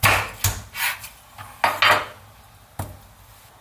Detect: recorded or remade recorded